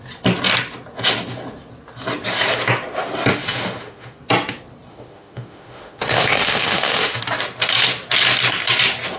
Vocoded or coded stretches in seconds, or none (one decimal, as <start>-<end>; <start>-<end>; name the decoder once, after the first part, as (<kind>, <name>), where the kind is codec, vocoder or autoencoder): 3.3-4.2 (autoencoder, DAC-VAE); 4.9-7.2